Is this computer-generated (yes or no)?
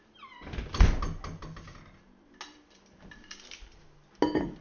no